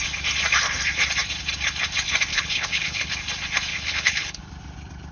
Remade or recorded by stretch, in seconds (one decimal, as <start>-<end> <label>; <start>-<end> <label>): 0.0-2.3 recorded; 2.3-3.1 remade; 3.1-3.7 recorded; 3.7-4.4 remade; 4.4-5.1 recorded